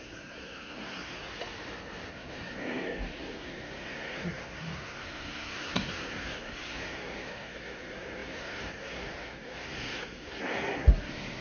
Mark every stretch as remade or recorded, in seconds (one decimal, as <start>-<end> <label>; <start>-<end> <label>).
0.0-1.3 remade; 1.3-2.1 recorded; 2.1-11.4 remade